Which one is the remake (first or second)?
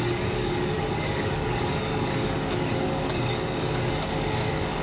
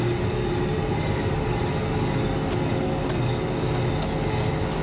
first